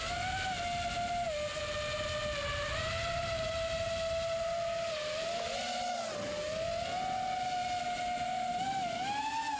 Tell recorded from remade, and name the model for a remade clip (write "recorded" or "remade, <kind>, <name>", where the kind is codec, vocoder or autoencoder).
recorded